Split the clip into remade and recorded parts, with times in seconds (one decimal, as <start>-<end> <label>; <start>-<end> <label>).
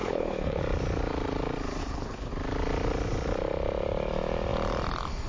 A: 0.0-0.6 remade; 0.6-1.8 recorded; 1.8-2.3 remade; 2.3-5.3 recorded